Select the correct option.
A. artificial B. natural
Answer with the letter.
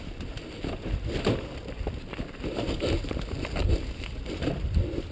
B